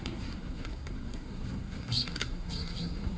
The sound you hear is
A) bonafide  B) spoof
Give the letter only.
B